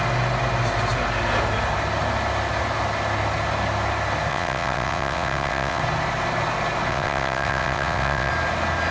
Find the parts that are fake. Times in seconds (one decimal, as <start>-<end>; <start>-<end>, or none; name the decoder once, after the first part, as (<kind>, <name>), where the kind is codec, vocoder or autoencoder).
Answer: 4.3-5.8 (vocoder, WaveNeXt); 6.9-8.3